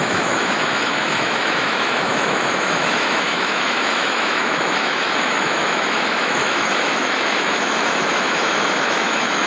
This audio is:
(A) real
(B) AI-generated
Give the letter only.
B